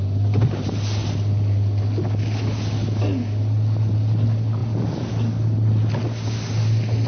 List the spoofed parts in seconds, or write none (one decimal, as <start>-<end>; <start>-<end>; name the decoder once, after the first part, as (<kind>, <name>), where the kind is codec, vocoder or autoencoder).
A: none